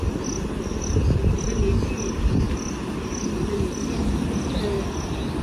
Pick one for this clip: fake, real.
real